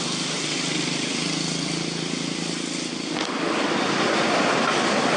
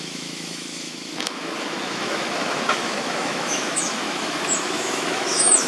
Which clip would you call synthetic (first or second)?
second